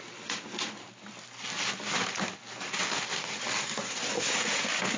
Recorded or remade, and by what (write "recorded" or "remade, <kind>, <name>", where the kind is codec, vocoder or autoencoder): recorded